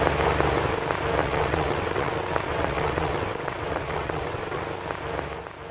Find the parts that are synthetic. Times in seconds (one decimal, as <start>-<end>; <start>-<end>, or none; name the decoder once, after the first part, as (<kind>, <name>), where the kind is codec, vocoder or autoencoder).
1.2-4.6 (vocoder, WaveNeXt)